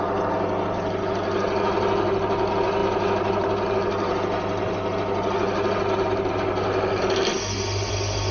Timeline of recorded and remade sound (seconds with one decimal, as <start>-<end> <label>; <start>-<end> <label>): 0.0-8.3 recorded